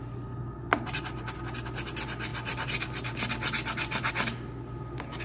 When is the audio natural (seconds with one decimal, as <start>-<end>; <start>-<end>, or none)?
0.0-5.2